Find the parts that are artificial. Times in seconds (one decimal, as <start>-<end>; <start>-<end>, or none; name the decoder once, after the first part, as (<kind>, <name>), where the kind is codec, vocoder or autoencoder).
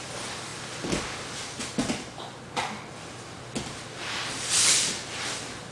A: none